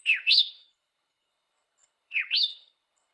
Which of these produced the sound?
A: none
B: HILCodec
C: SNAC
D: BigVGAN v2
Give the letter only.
B